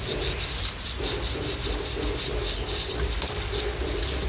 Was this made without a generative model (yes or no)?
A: yes